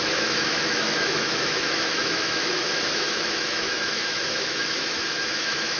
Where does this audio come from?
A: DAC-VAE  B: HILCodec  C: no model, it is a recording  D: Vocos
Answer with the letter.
A